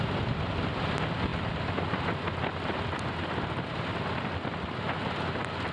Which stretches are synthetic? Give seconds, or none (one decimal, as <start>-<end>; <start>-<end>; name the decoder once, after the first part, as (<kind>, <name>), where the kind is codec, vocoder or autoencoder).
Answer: 1.3-2.0 (vocoder, BigVGAN v2)

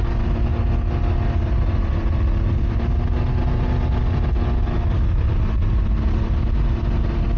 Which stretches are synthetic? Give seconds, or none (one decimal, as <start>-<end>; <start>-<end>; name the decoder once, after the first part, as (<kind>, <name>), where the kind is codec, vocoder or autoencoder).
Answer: none

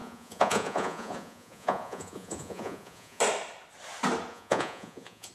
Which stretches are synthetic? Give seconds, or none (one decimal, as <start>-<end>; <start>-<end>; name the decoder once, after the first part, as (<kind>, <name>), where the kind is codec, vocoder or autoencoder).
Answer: 0.0-3.2 (vocoder, Vocos); 4.3-5.3

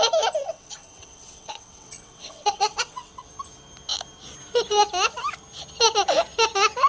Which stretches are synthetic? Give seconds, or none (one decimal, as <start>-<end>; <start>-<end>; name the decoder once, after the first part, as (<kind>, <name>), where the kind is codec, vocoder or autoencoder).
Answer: 0.4-3.3 (vocoder, WaveNeXt)

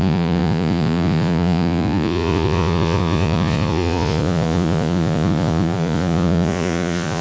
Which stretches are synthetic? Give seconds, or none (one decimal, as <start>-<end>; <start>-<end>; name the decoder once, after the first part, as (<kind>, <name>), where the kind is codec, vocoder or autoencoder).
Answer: 0.0-7.2 (vocoder, Vocos)

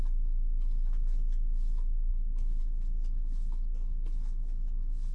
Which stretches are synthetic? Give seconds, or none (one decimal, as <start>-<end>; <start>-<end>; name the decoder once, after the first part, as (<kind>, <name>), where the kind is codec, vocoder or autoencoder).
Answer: 2.1-2.6 (codec, HILCodec)

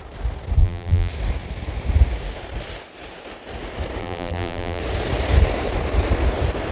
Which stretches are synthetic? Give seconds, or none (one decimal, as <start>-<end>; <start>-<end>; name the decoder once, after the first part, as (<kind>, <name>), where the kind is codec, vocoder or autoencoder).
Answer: 0.6-1.1 (vocoder, BigVGAN v2); 4.0-4.8